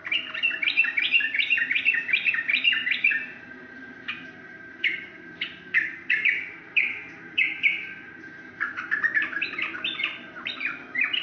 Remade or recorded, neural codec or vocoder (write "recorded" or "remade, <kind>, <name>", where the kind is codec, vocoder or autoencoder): remade, vocoder, BigVGAN v2